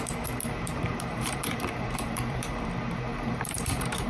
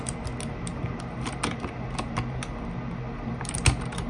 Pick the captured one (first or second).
second